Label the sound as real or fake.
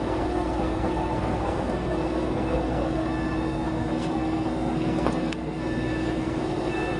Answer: fake